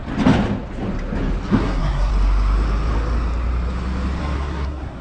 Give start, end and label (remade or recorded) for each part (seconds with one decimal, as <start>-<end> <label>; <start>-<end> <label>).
0.0-1.5 recorded; 1.5-2.1 remade; 2.1-4.2 recorded; 4.2-5.0 remade